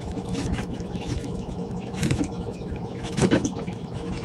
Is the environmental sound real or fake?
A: fake